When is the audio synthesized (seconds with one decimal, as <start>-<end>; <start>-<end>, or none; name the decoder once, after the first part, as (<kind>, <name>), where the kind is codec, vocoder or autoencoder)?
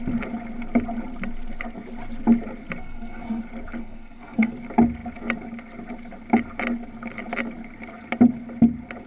2.8-3.4 (codec, SNAC); 3.8-4.5